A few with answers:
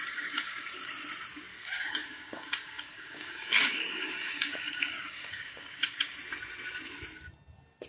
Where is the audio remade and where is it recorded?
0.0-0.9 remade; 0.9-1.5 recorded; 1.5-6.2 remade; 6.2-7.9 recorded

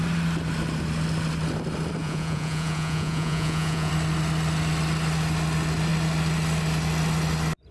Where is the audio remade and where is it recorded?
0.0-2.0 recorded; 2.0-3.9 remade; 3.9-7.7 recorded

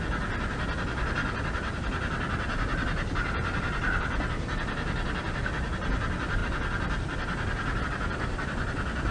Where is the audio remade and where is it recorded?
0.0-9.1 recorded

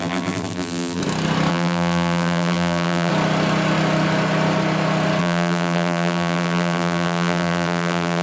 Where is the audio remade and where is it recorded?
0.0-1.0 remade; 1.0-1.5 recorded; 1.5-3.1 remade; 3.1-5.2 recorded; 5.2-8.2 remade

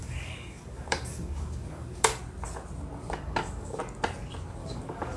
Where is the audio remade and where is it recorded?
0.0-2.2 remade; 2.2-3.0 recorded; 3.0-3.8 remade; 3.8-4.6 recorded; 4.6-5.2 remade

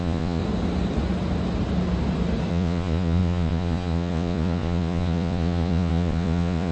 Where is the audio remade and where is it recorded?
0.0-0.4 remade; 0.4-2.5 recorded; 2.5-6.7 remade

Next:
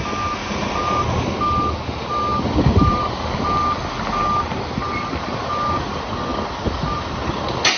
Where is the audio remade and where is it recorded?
0.0-0.4 recorded; 0.4-1.0 remade; 1.0-2.3 recorded; 2.3-3.4 remade; 3.4-7.8 recorded

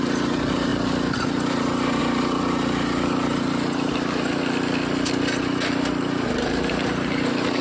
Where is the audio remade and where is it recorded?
0.0-4.3 remade; 4.3-5.4 recorded; 5.4-7.6 remade